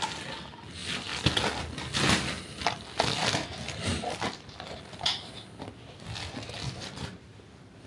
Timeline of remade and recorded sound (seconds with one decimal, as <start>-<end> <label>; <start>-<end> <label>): 0.0-7.9 recorded